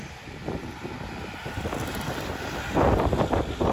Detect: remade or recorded recorded